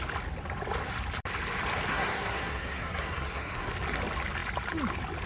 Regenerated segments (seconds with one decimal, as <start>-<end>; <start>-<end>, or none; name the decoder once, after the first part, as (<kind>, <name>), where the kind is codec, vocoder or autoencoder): 1.9-3.7 (codec, SNAC)